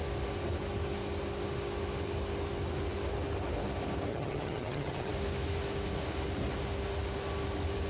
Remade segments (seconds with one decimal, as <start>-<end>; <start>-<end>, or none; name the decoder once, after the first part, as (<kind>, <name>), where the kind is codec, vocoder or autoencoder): 4.1-5.1 (vocoder, HiFi-GAN)